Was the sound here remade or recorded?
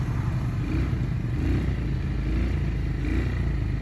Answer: recorded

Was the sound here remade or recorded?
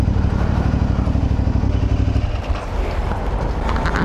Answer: recorded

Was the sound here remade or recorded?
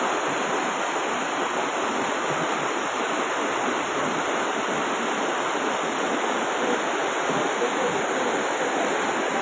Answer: recorded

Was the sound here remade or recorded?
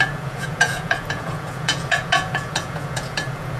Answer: remade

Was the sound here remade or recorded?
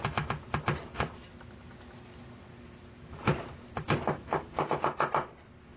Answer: recorded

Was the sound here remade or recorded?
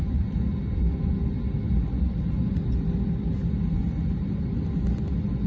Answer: recorded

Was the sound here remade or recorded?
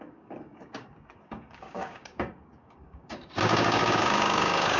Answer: remade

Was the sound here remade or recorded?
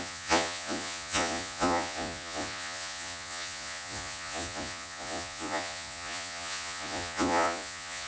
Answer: remade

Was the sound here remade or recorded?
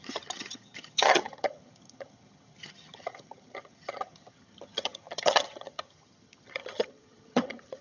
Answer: remade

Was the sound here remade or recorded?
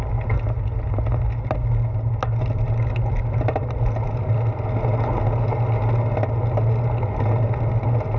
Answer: recorded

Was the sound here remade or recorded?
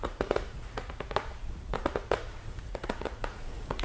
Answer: remade